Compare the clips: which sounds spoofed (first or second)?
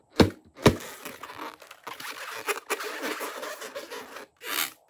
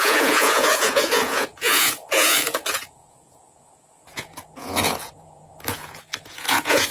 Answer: second